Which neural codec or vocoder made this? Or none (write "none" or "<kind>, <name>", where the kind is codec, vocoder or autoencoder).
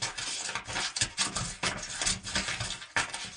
none